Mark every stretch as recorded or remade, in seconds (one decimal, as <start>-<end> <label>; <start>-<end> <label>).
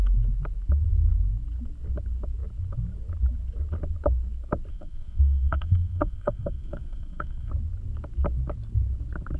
0.0-4.7 recorded; 4.7-7.5 remade; 7.5-9.4 recorded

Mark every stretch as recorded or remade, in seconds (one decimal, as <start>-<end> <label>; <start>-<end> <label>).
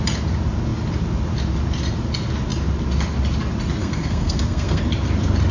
0.0-3.8 recorded; 3.8-4.8 remade; 4.8-5.5 recorded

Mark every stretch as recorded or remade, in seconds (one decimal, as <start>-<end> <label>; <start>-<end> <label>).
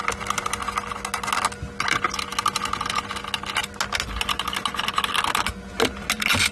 0.0-6.5 recorded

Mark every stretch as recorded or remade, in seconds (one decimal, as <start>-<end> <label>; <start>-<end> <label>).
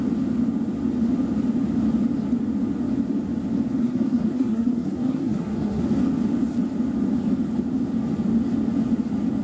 0.0-3.8 recorded; 3.8-5.8 remade; 5.8-9.4 recorded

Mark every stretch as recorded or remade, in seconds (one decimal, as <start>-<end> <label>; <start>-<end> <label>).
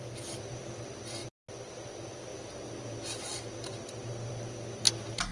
0.0-5.3 recorded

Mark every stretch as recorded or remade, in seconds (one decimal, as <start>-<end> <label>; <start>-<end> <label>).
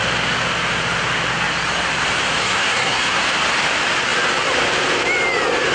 0.0-2.4 recorded; 2.4-3.2 remade; 3.2-5.7 recorded